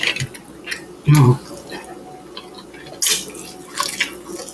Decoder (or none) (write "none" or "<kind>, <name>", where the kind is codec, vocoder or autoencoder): none